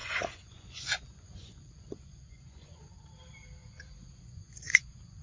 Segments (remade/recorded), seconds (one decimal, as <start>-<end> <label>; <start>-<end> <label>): 0.0-3.1 remade; 3.1-3.6 recorded; 3.6-5.2 remade